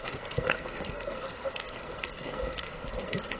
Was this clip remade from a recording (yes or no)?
yes